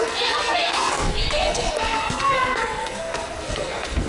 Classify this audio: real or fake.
fake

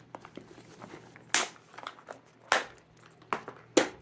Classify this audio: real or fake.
real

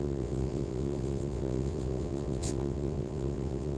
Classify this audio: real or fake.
fake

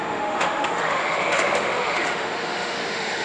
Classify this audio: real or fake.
fake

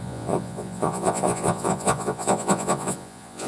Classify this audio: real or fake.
fake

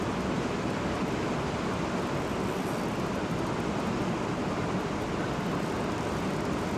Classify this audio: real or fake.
real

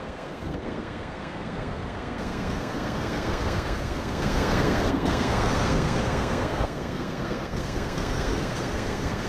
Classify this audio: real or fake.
fake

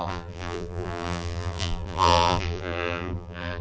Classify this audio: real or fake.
fake